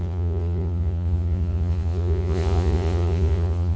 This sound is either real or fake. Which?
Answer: fake